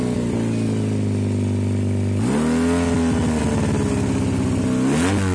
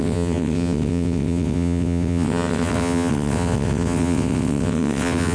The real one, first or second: first